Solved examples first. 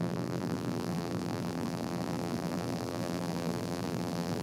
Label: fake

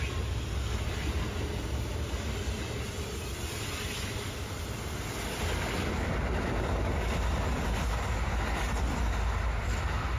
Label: real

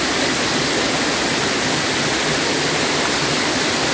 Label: real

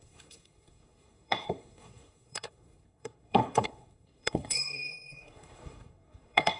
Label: fake